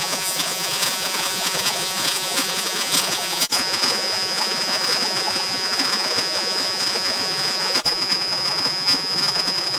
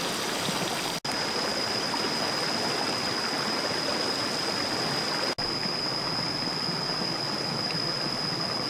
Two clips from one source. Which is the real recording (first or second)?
second